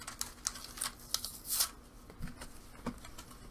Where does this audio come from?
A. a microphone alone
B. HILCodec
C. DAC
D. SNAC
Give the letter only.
A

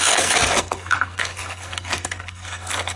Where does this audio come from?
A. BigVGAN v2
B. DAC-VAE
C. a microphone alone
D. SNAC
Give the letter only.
D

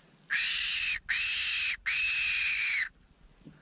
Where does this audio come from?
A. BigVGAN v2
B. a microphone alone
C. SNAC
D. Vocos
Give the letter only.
B